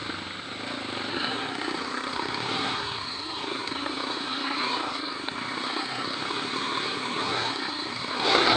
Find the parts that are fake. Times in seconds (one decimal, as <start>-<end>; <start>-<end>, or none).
1.1-8.6

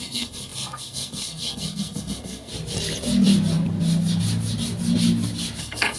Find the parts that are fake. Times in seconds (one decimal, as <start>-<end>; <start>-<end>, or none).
0.0-2.5; 5.6-6.0

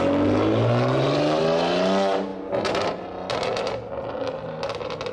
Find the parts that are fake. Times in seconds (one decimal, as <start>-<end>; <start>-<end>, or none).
none

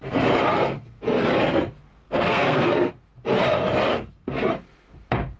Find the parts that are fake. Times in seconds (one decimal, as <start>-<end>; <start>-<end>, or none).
0.5-1.0; 2.0-2.9; 3.9-4.5

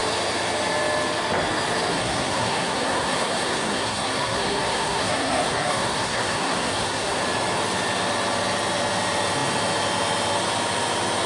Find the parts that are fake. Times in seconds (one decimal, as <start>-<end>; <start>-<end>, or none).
1.9-7.2

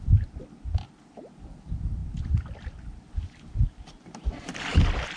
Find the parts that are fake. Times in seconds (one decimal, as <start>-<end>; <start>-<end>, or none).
none